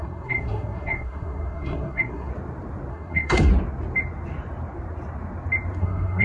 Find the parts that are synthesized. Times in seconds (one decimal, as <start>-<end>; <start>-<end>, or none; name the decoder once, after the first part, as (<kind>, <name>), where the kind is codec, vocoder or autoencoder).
0.0-2.3 (codec, SNAC); 2.9-3.5; 5.8-6.2